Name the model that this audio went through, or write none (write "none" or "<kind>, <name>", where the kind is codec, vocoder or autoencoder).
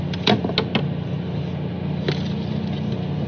none